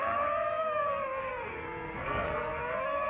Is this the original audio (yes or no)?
no